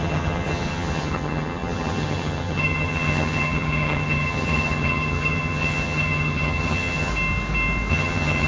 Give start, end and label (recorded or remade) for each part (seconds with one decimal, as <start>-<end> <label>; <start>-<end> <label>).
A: 0.0-7.1 remade; 7.1-7.9 recorded; 7.9-8.5 remade